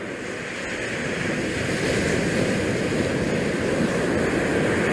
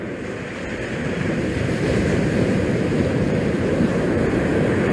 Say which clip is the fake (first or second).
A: second